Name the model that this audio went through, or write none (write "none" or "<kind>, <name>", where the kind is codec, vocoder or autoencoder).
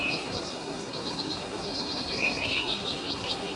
codec, SNAC